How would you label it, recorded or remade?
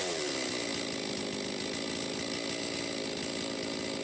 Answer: recorded